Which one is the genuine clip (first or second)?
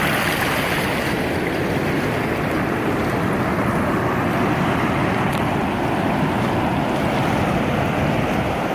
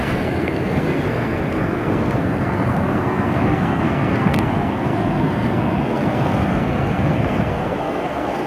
first